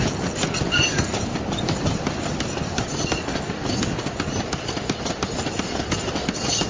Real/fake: real